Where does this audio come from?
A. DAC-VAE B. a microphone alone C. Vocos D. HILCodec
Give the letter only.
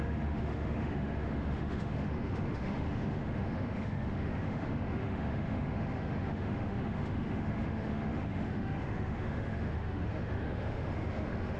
A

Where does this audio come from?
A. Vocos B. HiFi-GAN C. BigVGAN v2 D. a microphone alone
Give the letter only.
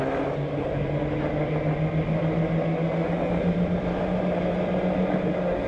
D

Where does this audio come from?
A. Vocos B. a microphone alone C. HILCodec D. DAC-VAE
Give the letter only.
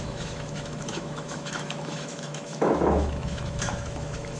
D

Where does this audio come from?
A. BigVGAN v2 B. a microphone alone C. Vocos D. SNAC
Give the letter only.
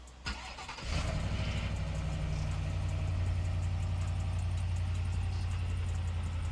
B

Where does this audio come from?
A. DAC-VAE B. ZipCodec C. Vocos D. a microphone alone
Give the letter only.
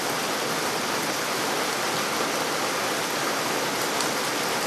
D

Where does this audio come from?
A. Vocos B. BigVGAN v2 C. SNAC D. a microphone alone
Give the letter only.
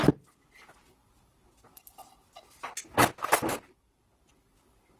D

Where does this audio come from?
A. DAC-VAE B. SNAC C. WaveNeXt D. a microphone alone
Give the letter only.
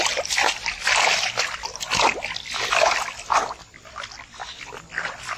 D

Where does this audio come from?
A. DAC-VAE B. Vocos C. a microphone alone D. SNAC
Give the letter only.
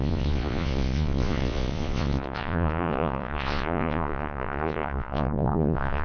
B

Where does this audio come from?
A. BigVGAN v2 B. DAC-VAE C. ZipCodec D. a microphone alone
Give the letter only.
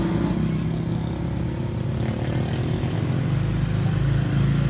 D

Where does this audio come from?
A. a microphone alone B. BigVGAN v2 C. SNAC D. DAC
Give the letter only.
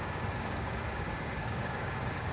D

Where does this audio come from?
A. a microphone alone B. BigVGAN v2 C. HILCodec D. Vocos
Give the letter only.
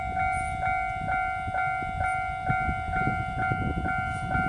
A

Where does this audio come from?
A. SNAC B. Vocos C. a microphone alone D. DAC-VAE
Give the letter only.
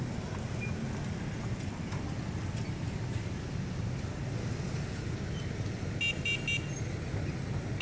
C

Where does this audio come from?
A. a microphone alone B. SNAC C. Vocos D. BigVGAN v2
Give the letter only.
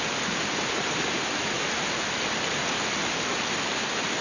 A